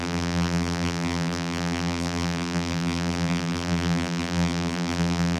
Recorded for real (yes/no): no